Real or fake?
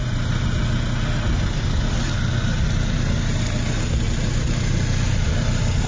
real